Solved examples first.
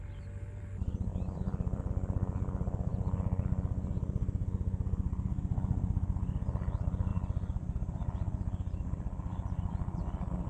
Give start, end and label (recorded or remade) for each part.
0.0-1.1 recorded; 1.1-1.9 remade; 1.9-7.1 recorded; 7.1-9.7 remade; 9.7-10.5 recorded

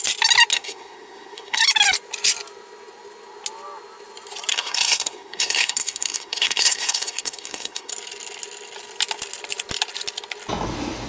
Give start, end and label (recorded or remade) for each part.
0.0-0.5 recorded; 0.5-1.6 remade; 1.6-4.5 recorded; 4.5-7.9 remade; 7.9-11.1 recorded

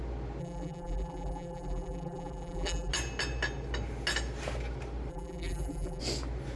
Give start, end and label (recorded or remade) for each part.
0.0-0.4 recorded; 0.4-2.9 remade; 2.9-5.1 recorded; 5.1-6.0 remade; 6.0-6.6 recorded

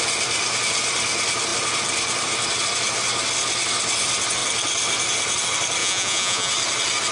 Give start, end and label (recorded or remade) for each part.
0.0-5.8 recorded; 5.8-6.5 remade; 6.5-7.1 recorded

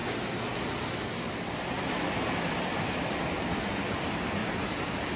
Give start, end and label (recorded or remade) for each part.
0.0-4.4 recorded; 4.4-5.2 remade